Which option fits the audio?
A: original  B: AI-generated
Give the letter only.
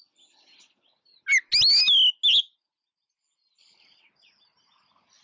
A